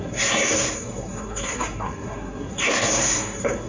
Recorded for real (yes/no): no